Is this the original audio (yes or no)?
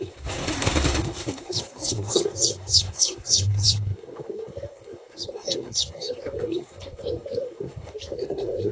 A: no